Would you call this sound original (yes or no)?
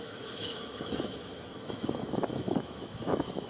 no